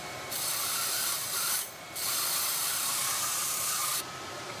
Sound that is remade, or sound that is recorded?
remade